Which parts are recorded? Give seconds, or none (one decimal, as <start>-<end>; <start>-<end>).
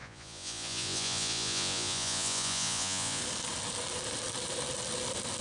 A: 3.2-5.4